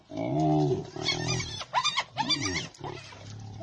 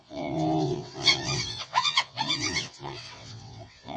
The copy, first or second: second